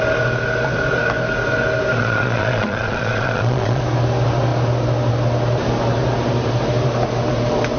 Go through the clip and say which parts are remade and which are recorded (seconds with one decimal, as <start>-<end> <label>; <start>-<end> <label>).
0.0-2.0 recorded; 2.0-3.8 remade; 3.8-7.8 recorded